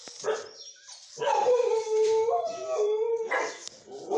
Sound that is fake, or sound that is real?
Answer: fake